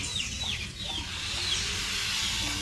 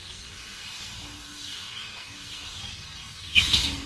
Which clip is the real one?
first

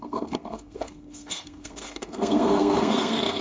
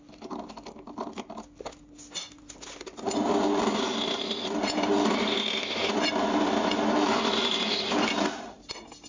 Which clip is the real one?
second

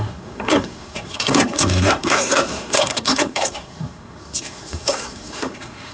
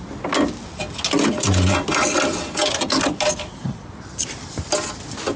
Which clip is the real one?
second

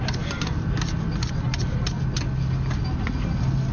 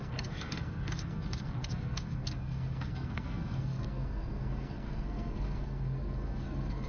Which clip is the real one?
first